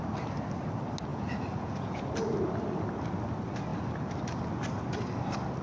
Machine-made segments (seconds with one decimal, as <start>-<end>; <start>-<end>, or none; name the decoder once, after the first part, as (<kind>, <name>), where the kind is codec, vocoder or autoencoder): 1.1-2.0 (vocoder, Vocos)